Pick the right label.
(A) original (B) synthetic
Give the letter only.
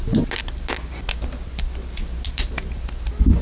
A